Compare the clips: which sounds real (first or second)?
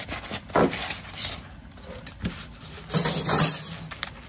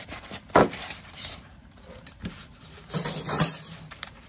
first